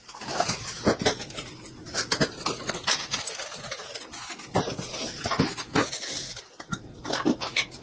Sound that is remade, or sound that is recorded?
recorded